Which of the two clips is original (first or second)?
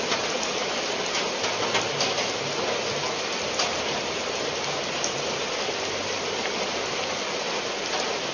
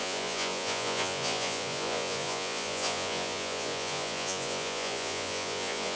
first